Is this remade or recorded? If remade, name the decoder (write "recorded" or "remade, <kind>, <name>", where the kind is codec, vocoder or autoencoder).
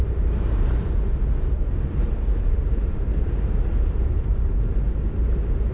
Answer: remade, vocoder, BigVGAN v2